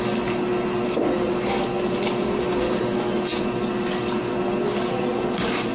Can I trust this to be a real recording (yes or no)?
yes